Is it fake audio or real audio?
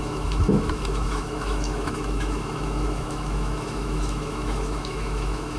fake